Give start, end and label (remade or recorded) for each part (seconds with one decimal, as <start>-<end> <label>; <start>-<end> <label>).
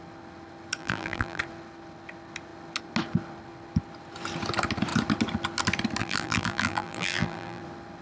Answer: 0.0-0.8 recorded; 0.8-1.4 remade; 1.4-6.0 recorded; 6.0-7.6 remade; 7.6-8.0 recorded